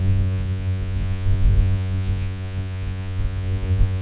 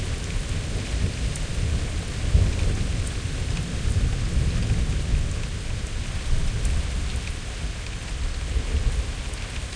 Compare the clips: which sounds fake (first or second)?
first